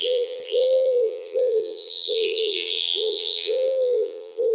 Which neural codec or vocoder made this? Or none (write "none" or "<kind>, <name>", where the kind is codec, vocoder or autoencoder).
vocoder, BigVGAN v2